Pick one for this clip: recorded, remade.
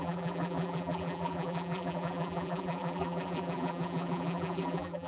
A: remade